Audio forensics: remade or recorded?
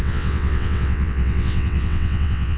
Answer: remade